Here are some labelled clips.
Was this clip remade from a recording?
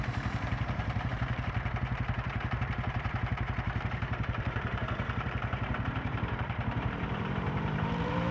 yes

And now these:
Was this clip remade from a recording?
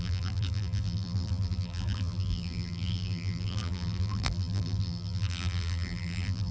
yes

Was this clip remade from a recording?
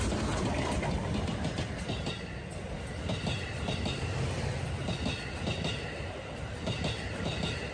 no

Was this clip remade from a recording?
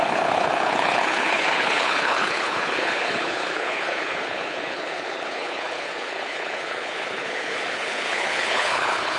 yes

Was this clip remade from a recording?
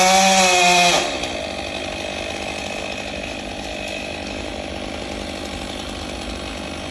no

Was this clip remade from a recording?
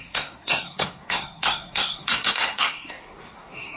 yes